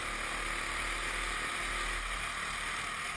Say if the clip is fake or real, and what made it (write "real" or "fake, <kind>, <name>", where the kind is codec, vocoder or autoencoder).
real